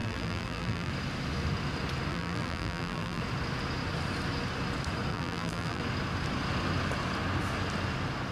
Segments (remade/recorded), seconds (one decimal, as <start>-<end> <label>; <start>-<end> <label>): 0.0-0.9 remade; 0.9-2.1 recorded; 2.1-3.2 remade; 3.2-5.1 recorded; 5.1-5.8 remade; 5.8-8.3 recorded